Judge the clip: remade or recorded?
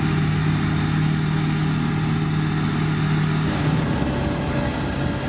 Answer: recorded